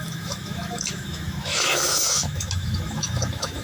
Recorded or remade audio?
remade